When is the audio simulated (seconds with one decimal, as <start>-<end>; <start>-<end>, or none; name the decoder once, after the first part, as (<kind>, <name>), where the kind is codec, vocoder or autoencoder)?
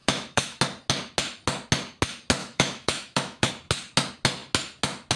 0.0-0.6 (autoencoder, DAC-VAE); 2.4-3.5